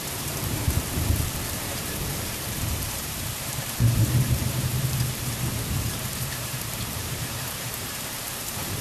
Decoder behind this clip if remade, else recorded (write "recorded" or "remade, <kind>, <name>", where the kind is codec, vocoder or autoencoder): remade, vocoder, BigVGAN v2